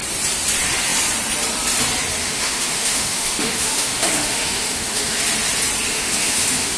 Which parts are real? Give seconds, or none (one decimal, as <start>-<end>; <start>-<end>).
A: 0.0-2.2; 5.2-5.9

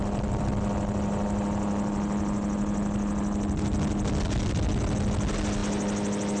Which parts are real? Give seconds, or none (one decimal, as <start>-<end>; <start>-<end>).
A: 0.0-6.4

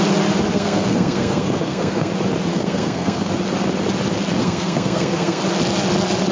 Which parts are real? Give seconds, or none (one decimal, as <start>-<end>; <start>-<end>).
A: 0.0-0.5; 2.1-2.5; 3.3-4.4; 5.4-6.3